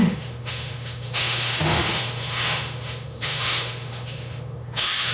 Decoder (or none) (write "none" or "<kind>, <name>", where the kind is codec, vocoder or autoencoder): autoencoder, DAC-VAE